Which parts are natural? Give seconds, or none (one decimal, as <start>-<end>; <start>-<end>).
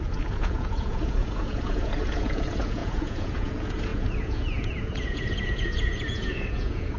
none